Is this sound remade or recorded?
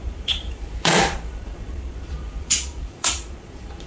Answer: remade